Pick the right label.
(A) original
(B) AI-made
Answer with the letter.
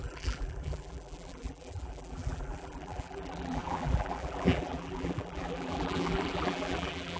B